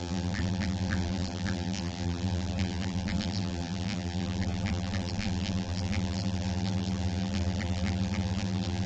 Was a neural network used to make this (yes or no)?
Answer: yes